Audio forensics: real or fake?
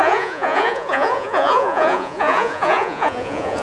fake